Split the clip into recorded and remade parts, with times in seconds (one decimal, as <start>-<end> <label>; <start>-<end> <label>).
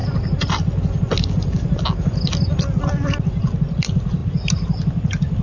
0.0-5.4 recorded